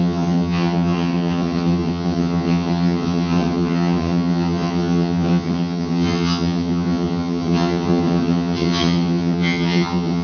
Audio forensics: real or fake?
fake